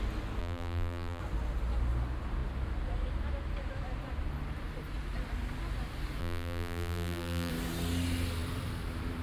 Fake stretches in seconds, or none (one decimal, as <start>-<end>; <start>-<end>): 0.4-1.2; 6.2-7.5